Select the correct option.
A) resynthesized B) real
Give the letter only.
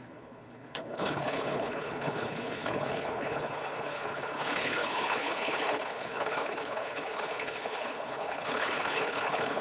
A